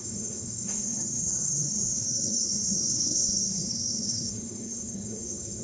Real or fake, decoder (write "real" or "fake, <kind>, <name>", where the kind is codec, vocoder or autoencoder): fake, codec, SNAC